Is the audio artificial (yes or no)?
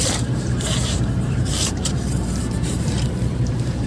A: yes